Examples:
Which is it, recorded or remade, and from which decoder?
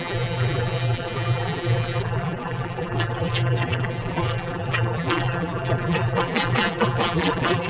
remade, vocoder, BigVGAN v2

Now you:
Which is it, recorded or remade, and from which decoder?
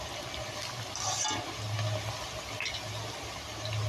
recorded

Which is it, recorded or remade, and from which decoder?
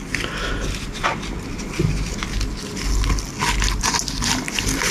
recorded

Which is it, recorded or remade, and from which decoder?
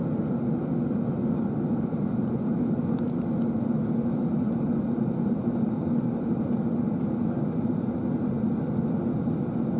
recorded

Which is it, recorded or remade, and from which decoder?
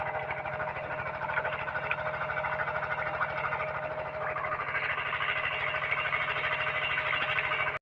recorded